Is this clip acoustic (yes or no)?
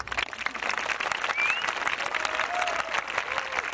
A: yes